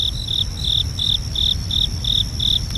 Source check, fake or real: real